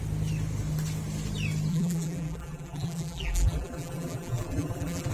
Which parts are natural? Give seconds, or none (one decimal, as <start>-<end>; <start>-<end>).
0.0-1.7